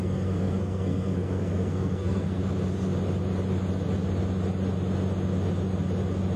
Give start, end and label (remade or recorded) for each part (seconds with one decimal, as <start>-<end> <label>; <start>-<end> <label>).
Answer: 0.0-2.4 remade; 2.4-6.4 recorded